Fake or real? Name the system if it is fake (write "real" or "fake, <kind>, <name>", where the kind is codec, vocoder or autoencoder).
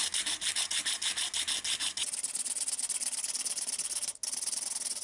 real